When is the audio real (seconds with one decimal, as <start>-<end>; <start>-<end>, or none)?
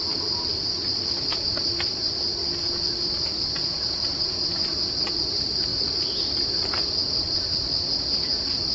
0.0-3.6; 4.6-8.7